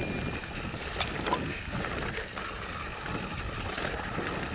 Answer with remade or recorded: recorded